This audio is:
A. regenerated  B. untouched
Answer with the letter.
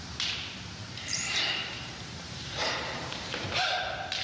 A